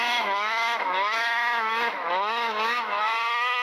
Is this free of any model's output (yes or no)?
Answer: no